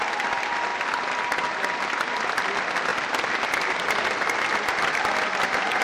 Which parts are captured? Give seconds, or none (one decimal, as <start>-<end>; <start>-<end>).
0.0-5.8